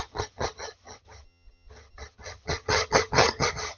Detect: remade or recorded remade